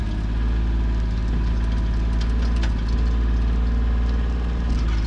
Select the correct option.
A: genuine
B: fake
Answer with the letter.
A